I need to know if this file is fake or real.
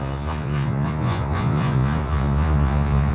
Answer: fake